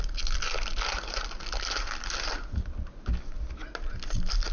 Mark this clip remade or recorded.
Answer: recorded